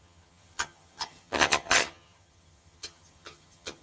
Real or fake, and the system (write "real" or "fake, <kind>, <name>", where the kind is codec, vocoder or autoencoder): fake, vocoder, HiFi-GAN